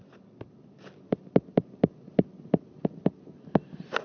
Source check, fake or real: real